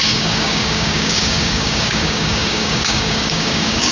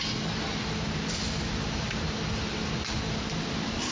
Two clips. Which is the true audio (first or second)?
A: second